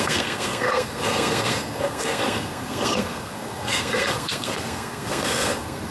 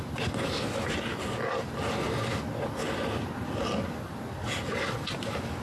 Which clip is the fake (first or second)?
first